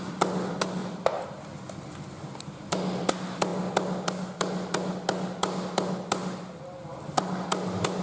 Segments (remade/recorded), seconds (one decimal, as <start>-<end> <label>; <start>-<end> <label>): 0.0-0.8 recorded; 0.8-1.8 remade; 1.8-8.0 recorded